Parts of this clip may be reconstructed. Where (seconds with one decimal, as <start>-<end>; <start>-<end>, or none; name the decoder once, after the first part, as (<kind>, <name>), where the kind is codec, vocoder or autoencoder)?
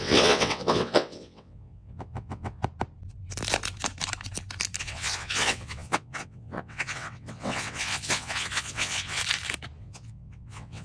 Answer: 0.0-2.6 (vocoder, WaveNeXt); 4.8-9.2; 9.8-10.8